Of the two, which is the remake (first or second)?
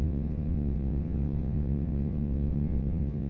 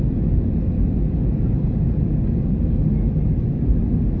first